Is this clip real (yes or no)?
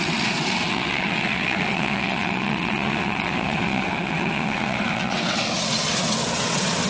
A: no